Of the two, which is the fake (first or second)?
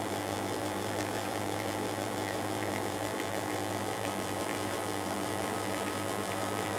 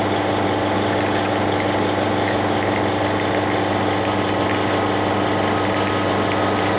first